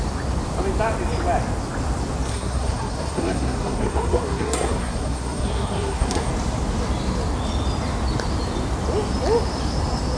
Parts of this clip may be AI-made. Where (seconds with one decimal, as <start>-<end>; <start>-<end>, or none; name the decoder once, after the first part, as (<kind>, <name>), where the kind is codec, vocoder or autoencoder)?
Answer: 2.3-6.3 (codec, SNAC)